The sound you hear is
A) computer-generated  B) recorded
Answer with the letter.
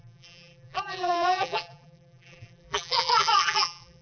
A